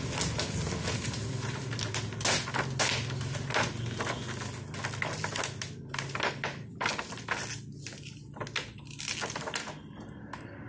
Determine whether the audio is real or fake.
real